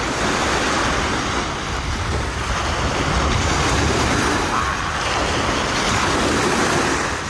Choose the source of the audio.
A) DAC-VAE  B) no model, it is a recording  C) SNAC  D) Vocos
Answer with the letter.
B